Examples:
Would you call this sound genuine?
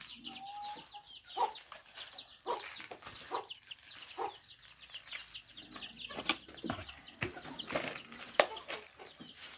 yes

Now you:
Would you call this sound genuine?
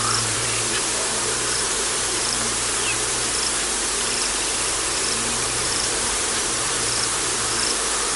no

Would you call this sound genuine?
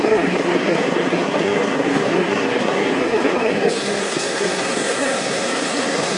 no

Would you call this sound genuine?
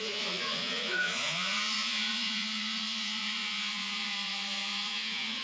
no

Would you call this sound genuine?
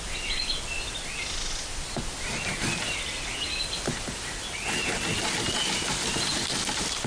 yes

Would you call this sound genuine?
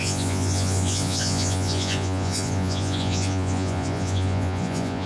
no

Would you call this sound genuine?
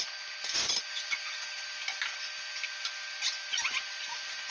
yes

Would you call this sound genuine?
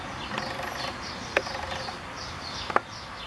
yes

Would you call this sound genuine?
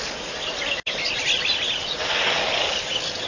yes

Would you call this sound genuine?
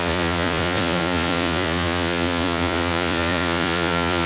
no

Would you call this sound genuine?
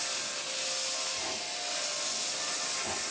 yes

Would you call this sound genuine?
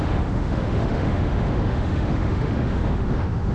no